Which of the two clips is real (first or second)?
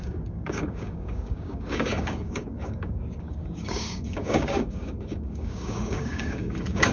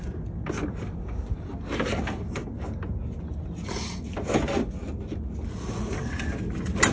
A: second